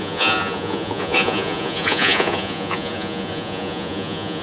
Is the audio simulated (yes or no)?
yes